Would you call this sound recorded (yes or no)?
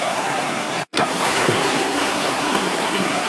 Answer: no